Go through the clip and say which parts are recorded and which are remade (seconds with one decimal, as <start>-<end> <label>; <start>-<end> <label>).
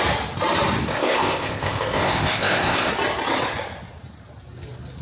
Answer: 0.0-0.9 recorded; 0.9-2.9 remade; 2.9-5.0 recorded